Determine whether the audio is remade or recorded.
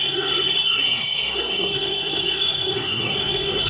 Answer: remade